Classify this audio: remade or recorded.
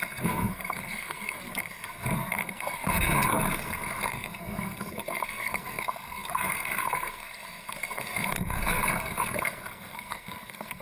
remade